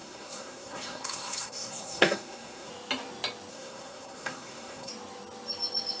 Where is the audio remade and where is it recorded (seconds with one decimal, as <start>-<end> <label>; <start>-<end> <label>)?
0.0-2.7 remade; 2.7-3.5 recorded; 3.5-4.9 remade; 4.9-6.0 recorded

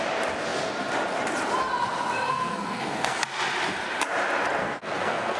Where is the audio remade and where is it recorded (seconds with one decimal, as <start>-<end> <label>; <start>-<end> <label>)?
0.0-2.3 recorded; 2.3-3.2 remade; 3.2-4.6 recorded; 4.6-5.4 remade

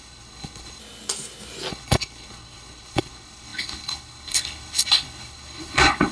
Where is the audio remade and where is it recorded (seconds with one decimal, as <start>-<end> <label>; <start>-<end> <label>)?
0.0-0.8 remade; 0.8-1.7 recorded; 1.7-6.1 remade

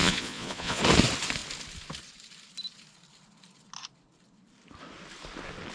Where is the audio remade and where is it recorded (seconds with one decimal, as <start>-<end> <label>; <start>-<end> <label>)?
0.0-0.8 remade; 0.8-5.7 recorded

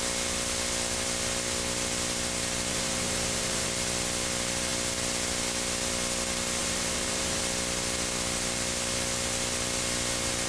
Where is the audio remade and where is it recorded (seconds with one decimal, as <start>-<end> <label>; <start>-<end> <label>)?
0.0-2.7 recorded; 2.7-3.7 remade; 3.7-6.6 recorded; 6.6-7.4 remade; 7.4-10.5 recorded